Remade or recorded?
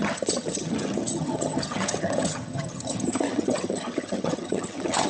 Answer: remade